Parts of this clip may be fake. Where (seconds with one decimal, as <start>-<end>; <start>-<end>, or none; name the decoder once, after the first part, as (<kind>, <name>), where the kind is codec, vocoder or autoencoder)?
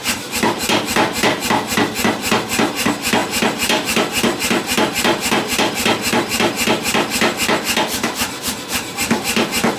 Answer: 0.0-9.8 (vocoder, BigVGAN v2)